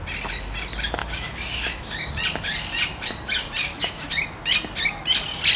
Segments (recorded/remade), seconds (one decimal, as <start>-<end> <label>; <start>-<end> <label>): 0.0-1.0 recorded; 1.0-1.9 remade; 1.9-3.6 recorded; 3.6-4.1 remade; 4.1-5.6 recorded